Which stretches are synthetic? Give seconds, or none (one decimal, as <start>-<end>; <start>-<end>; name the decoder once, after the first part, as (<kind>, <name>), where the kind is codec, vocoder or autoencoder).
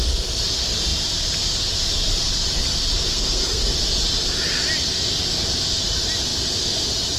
3.1-3.6 (codec, SNAC)